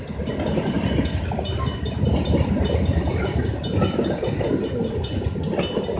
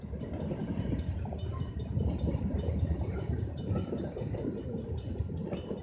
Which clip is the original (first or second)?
first